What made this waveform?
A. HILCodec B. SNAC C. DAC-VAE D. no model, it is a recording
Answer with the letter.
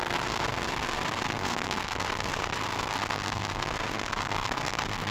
B